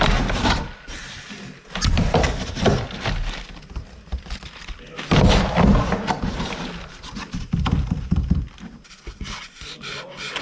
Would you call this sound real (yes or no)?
yes